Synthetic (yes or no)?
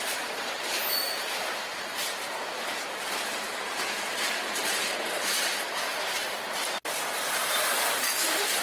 yes